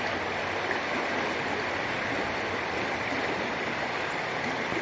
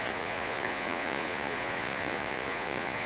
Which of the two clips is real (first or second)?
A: first